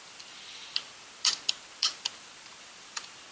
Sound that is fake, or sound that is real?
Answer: real